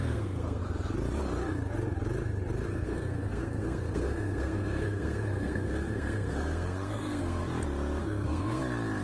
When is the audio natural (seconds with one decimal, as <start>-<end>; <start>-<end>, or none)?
0.6-2.7; 7.4-8.0; 8.6-9.0